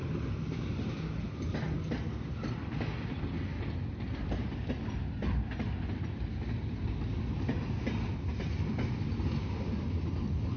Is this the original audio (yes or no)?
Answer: yes